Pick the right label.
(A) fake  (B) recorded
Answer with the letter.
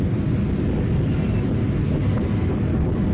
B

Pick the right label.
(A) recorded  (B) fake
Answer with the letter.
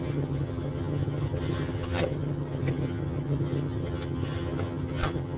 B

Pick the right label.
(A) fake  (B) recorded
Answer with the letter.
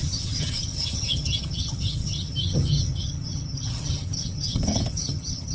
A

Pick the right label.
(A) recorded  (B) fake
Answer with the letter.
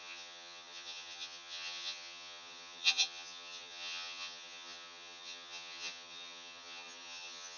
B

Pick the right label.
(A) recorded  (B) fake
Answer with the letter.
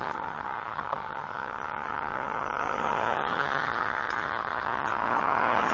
B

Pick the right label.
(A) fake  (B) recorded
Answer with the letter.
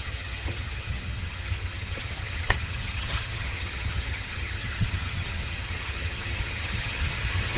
A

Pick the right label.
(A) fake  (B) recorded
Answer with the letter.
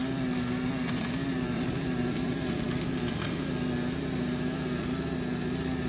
B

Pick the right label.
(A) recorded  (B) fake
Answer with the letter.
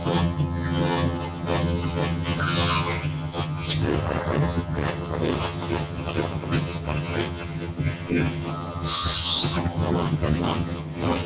B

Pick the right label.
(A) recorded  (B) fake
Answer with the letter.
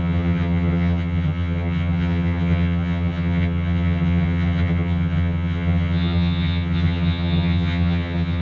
B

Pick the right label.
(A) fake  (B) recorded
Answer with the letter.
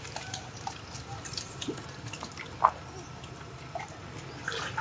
B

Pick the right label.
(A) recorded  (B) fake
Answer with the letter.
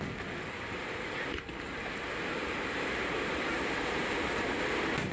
A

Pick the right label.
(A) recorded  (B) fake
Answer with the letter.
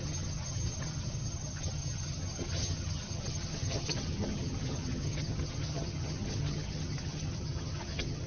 B